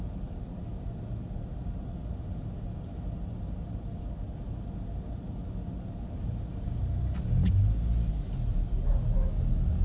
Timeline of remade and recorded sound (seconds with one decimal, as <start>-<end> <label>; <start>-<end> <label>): 0.0-9.8 recorded